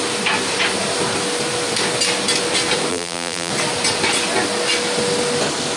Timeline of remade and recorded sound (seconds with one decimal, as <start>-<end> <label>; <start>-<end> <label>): 0.0-2.9 recorded; 2.9-3.5 remade; 3.5-5.8 recorded